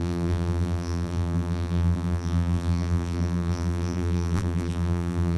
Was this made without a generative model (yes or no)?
no